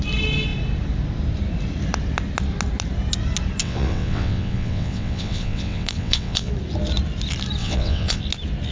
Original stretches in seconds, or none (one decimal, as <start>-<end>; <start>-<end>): 0.0-3.6; 6.5-7.6; 8.2-8.7